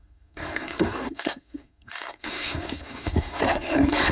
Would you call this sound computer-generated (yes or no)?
yes